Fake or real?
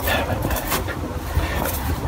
real